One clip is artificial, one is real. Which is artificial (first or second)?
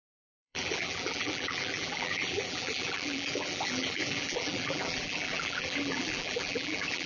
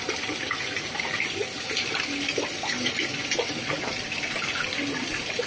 first